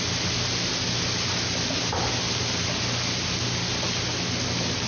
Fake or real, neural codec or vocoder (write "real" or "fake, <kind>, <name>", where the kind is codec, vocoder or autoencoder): real